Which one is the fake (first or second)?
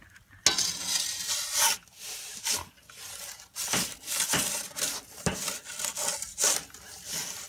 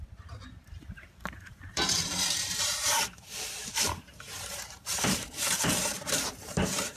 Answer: second